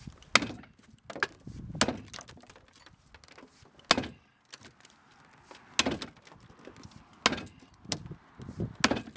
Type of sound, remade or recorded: recorded